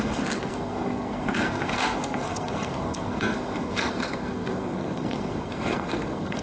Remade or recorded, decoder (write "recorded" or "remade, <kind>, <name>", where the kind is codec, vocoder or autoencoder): remade, codec, SNAC